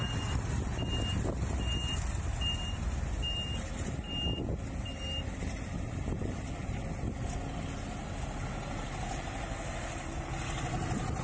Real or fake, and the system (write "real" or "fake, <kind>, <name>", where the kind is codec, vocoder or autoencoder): real